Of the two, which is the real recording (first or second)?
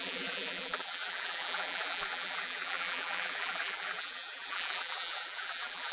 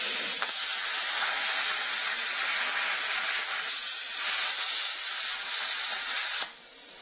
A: second